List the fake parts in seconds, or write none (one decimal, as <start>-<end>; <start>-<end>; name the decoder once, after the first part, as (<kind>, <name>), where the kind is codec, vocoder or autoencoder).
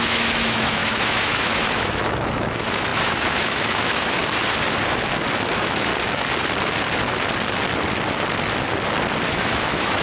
0.0-4.2 (autoencoder, DAC-VAE); 5.5-5.9; 9.3-10.0